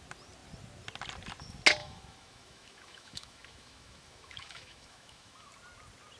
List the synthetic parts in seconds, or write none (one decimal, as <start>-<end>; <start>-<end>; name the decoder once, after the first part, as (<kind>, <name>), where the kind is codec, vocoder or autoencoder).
1.8-5.5 (autoencoder, DAC-VAE)